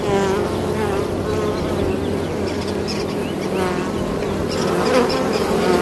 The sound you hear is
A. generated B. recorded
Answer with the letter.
B